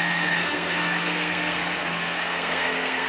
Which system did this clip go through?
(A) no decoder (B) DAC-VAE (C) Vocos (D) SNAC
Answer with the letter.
D